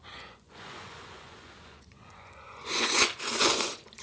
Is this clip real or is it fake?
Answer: fake